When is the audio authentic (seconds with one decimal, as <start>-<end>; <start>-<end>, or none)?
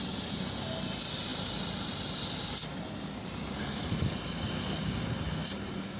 0.0-6.0